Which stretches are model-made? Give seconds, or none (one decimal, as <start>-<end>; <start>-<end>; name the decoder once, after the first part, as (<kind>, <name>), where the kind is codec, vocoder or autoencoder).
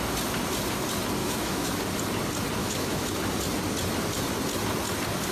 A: 1.2-1.8 (autoencoder, DAC-VAE); 2.6-3.1